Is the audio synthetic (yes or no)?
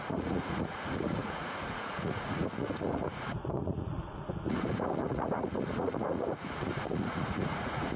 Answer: yes